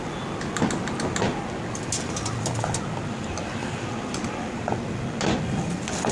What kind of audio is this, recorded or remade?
recorded